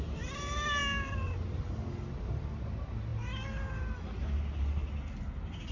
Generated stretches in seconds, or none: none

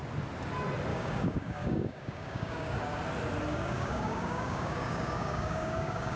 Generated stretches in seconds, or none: 0.9-3.0; 3.5-6.2

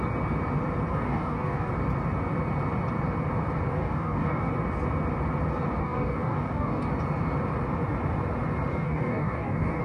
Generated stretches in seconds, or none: 0.9-1.7; 3.7-4.5; 5.8-6.9; 8.7-9.8